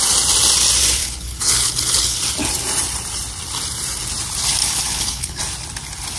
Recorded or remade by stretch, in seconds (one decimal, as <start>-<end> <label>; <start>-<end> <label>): 0.0-1.0 recorded; 1.0-2.2 remade; 2.2-4.6 recorded; 4.6-5.4 remade; 5.4-6.2 recorded